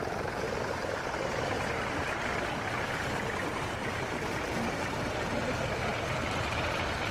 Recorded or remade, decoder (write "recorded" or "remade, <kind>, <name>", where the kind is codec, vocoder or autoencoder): recorded